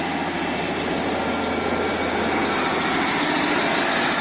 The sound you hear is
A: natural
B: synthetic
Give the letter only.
A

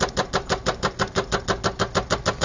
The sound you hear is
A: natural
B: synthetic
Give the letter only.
A